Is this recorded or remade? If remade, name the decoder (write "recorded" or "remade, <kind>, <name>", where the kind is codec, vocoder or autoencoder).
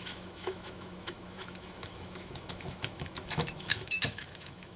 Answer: remade, autoencoder, DAC-VAE